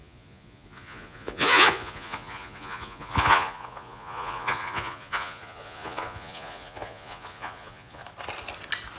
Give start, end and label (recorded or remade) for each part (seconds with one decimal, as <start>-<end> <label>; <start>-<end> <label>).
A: 0.0-8.0 remade; 8.0-9.0 recorded